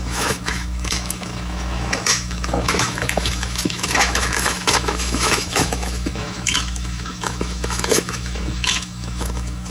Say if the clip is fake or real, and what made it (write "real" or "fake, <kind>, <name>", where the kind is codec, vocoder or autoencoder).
fake, autoencoder, DAC-VAE